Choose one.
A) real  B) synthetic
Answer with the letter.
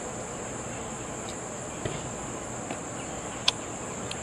A